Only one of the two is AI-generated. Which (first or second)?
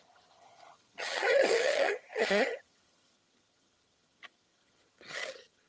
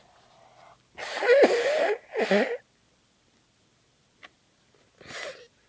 first